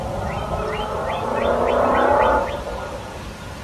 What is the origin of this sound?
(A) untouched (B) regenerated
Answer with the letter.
A